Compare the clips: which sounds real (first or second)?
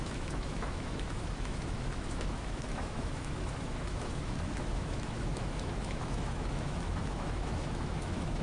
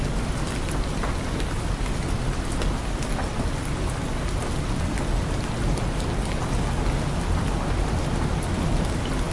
second